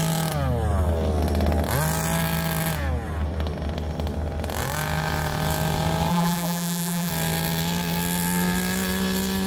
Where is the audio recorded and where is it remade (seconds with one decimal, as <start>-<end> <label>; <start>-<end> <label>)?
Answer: 0.0-6.1 recorded; 6.1-7.1 remade; 7.1-9.5 recorded